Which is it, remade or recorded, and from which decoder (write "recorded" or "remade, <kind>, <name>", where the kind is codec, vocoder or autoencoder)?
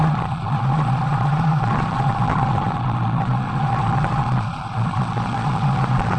remade, vocoder, Vocos